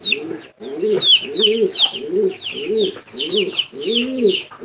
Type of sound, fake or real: fake